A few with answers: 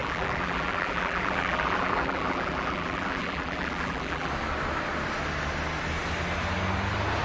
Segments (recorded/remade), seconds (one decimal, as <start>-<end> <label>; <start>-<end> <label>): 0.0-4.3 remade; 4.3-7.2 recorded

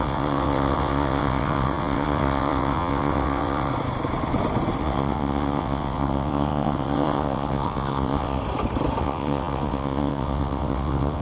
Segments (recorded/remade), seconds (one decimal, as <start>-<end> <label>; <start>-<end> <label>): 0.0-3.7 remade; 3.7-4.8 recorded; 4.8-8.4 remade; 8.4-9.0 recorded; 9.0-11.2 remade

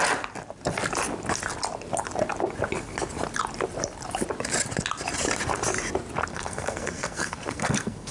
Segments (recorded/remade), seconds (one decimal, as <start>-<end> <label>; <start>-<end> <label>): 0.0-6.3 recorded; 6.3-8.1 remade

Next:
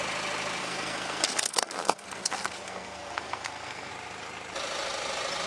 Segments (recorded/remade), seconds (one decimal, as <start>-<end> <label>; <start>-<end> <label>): 0.0-0.6 recorded; 0.6-3.9 remade; 3.9-5.5 recorded